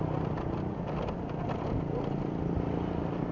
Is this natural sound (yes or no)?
yes